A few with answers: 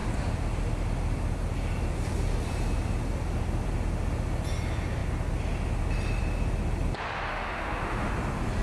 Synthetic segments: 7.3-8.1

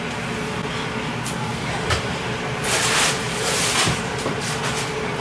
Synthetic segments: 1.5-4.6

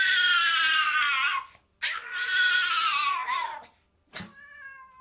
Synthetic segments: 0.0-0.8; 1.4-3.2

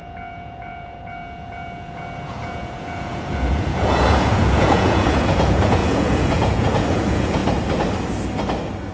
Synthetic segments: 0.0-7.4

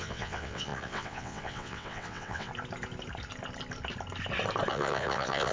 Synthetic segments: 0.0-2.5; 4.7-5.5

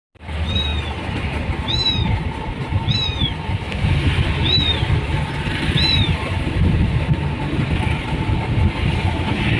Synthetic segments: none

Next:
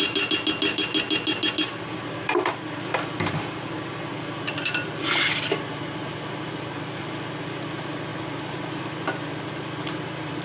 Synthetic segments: none

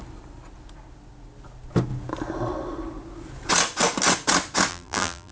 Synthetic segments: 4.7-5.3